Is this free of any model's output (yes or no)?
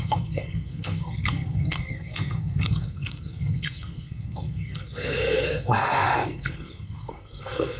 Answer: no